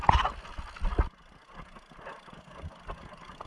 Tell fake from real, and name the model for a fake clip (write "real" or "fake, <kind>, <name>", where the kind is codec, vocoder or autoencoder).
real